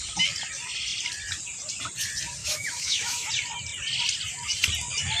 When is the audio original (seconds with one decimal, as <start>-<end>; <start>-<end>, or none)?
0.0-2.4; 3.3-5.2